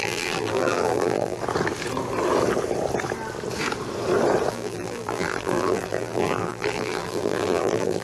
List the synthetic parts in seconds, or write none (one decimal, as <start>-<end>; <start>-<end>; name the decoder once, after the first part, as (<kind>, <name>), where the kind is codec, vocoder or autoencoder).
0.0-1.4 (vocoder, BigVGAN v2); 4.5-8.0